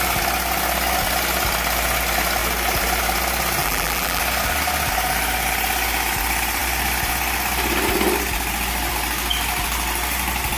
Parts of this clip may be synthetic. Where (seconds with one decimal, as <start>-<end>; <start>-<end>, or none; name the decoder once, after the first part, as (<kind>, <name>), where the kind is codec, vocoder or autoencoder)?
3.6-4.2 (vocoder, BigVGAN v2)